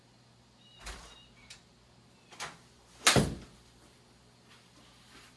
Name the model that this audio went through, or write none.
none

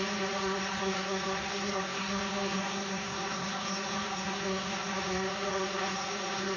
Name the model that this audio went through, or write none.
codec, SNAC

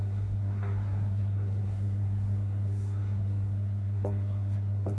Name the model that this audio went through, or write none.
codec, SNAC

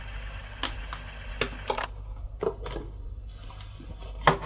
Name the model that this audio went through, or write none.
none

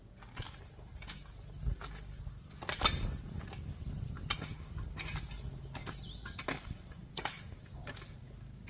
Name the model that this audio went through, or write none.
none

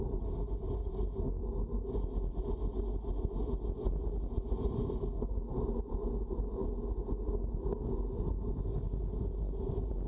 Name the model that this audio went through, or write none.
none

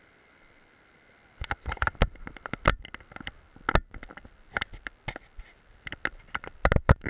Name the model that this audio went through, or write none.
none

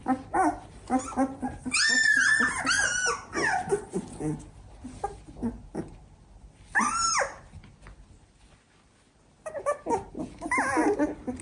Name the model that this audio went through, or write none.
none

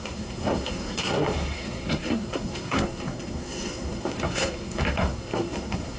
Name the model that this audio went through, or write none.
codec, SNAC